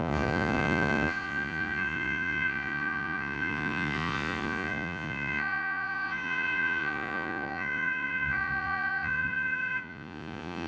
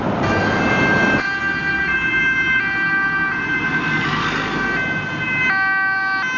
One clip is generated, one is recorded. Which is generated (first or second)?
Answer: first